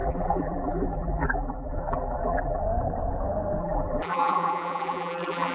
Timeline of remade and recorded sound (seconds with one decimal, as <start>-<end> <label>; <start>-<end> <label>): 0.0-2.6 remade; 2.6-3.6 recorded; 3.6-5.5 remade